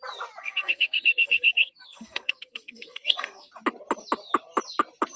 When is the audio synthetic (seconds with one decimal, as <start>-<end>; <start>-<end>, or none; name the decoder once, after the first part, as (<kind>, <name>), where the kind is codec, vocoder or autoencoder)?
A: 0.4-3.5 (codec, SNAC)